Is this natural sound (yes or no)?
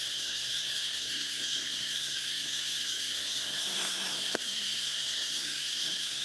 no